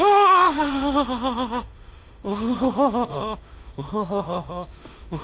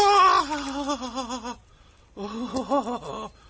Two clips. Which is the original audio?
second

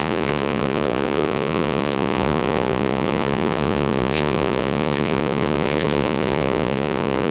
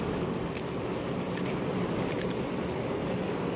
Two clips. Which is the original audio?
second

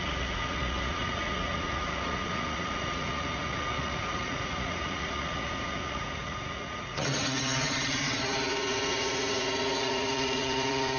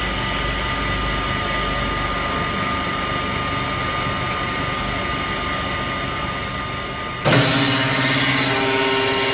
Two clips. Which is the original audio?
second